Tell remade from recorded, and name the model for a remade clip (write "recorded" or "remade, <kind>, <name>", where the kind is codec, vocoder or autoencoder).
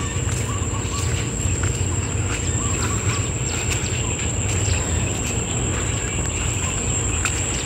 remade, vocoder, BigVGAN v2